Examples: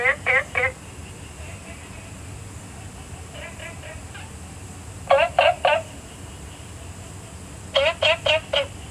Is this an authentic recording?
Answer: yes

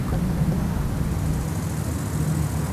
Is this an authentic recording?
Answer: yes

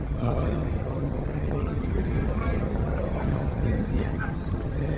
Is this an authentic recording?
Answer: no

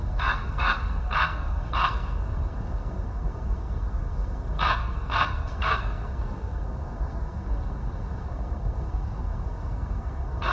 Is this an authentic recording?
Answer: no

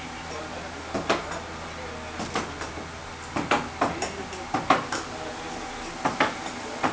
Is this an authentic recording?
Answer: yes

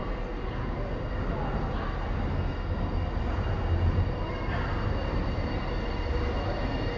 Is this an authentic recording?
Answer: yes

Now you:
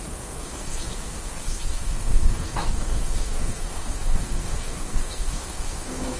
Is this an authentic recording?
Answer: no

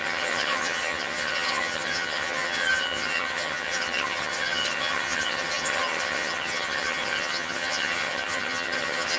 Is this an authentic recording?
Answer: no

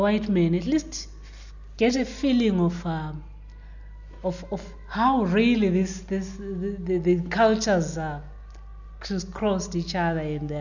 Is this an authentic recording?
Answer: yes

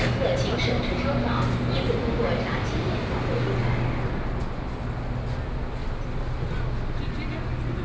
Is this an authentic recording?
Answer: yes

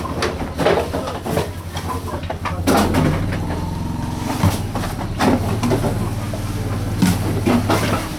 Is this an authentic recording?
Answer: yes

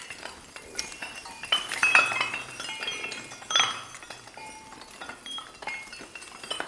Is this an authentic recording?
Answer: no